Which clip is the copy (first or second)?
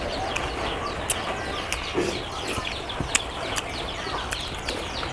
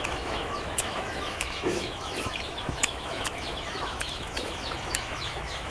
second